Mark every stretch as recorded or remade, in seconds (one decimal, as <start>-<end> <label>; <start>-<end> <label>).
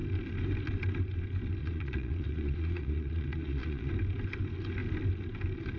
0.0-1.6 recorded; 1.6-3.9 remade; 3.9-5.8 recorded